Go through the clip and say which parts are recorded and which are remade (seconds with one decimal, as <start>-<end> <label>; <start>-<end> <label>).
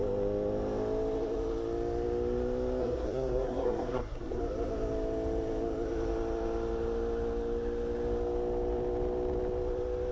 0.0-2.8 recorded; 2.8-4.4 remade; 4.4-10.1 recorded